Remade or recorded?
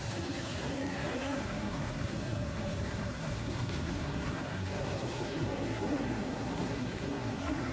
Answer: remade